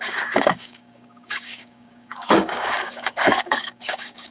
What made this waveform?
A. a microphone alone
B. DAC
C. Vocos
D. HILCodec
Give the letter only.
B